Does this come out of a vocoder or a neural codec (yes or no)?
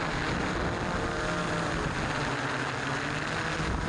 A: no